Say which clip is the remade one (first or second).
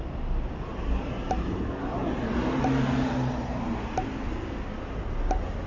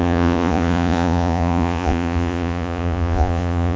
second